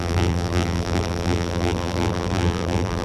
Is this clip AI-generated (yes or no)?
yes